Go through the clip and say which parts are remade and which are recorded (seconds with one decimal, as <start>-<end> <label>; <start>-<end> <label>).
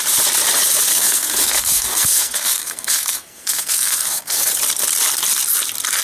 0.0-0.9 recorded; 0.9-4.5 remade; 4.5-6.0 recorded